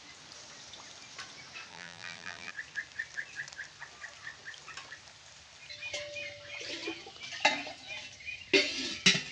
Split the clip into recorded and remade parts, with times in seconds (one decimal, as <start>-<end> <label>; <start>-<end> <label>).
0.0-1.7 recorded; 1.7-2.5 remade; 2.5-9.3 recorded